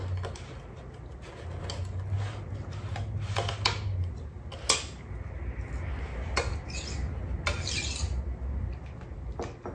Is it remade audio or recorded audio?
recorded